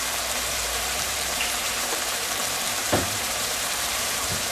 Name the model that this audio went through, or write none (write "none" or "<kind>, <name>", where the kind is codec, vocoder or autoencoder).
vocoder, BigVGAN v2